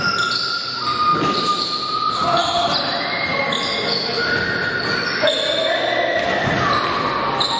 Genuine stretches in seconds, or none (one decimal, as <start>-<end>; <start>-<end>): 0.0-7.6